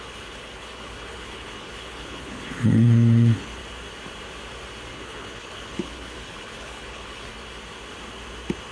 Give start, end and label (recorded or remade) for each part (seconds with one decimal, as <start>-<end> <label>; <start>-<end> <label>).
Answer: 0.0-3.6 remade; 3.6-4.9 recorded; 4.9-7.3 remade; 7.3-8.7 recorded